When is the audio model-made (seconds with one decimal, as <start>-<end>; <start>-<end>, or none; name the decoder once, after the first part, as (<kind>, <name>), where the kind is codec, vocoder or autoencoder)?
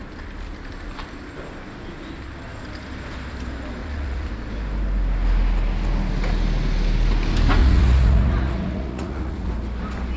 3.8-4.3 (vocoder, Vocos); 7.6-9.5